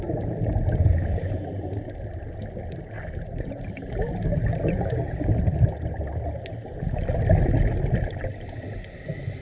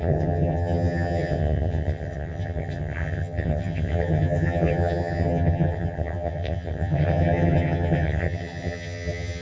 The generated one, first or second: second